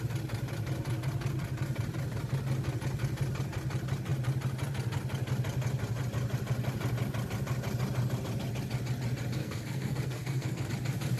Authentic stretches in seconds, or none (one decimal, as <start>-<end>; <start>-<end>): 0.0-9.4; 10.7-11.2